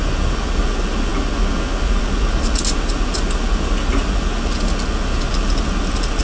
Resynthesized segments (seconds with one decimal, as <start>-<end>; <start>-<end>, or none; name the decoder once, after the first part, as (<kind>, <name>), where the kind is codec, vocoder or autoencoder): none